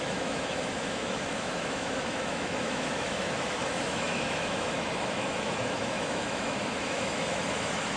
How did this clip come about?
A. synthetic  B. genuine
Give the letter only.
A